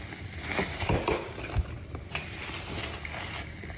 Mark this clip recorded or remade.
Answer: recorded